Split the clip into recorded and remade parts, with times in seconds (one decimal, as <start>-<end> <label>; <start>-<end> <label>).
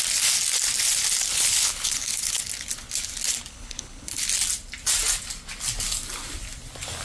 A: 0.0-1.3 recorded; 1.3-2.4 remade; 2.4-3.5 recorded; 3.5-4.2 remade; 4.2-7.0 recorded